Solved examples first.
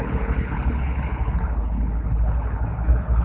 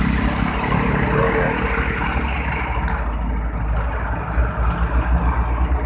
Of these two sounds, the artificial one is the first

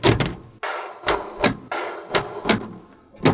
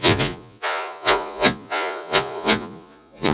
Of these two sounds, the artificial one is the second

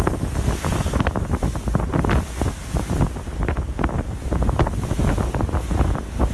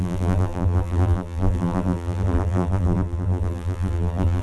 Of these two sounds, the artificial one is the second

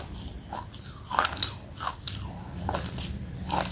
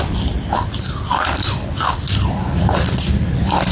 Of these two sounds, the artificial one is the second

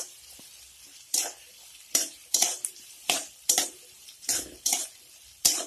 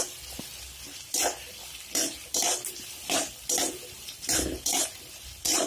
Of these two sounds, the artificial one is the first